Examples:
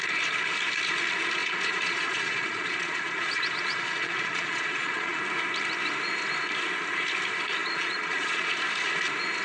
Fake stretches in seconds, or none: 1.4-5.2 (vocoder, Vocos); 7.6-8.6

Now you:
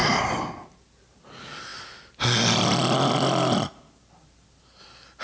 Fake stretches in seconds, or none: none

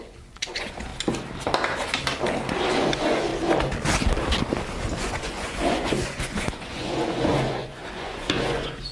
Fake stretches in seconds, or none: 0.0-0.9 (vocoder, Vocos); 2.7-3.3; 5.0-8.9

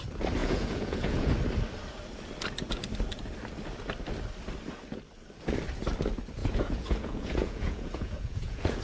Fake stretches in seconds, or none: 0.4-1.3 (vocoder, Vocos); 6.4-8.8

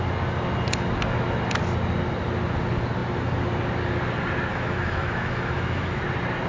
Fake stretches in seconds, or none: 4.5-6.0 (autoencoder, DAC-VAE)

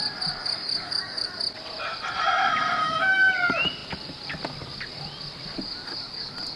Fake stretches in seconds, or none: 0.4-1.3 (codec, DAC); 2.8-3.3

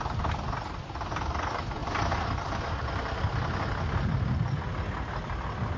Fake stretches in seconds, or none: none